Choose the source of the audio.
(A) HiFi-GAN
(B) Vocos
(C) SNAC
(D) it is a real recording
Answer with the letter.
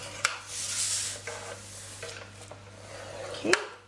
D